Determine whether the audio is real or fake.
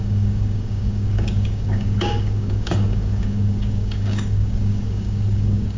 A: fake